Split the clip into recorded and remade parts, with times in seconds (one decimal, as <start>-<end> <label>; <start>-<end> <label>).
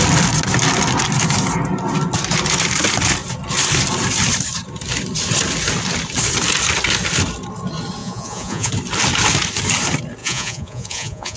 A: 0.0-8.0 recorded; 8.0-8.7 remade; 8.7-10.2 recorded; 10.2-11.4 remade